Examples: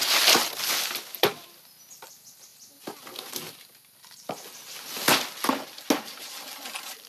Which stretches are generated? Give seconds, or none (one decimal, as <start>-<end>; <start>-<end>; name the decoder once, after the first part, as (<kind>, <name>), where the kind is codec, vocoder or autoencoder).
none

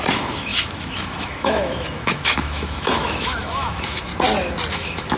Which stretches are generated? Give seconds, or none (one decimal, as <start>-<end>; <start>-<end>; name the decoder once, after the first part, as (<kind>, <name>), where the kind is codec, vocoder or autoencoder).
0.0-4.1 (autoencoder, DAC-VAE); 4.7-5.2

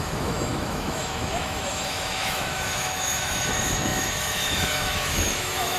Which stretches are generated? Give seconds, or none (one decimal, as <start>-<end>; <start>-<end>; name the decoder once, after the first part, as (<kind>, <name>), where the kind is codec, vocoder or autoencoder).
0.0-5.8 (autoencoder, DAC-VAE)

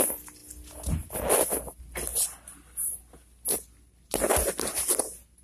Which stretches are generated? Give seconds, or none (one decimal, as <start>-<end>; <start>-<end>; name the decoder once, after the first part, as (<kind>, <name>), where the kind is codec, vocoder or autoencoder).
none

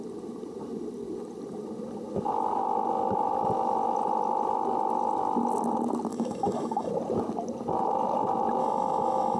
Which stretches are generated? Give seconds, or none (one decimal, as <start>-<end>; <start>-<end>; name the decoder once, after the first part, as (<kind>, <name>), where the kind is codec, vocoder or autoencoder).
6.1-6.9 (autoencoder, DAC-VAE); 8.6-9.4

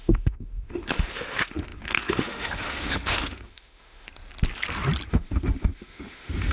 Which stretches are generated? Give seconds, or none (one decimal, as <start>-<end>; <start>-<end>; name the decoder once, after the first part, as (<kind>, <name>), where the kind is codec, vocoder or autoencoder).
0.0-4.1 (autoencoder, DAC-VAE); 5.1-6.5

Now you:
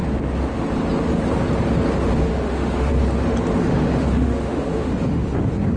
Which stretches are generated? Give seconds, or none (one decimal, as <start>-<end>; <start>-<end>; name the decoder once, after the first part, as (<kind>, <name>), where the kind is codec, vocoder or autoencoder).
2.3-2.9 (autoencoder, DAC-VAE); 3.6-5.3

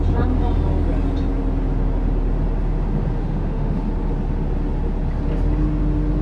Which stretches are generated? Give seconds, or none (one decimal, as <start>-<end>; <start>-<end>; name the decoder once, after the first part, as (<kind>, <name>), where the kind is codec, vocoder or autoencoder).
3.2-3.8 (autoencoder, DAC-VAE)